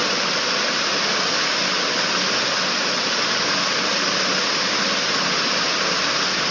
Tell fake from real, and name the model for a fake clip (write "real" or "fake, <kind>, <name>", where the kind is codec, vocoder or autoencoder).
real